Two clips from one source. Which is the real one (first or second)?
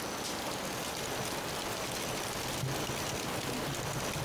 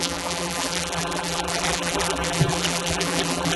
first